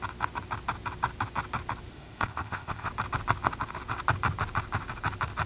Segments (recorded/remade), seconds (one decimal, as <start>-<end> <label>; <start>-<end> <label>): 0.0-1.9 recorded; 1.9-2.9 remade; 2.9-5.5 recorded